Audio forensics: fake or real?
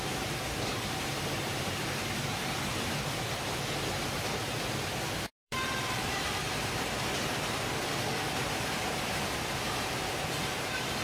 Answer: fake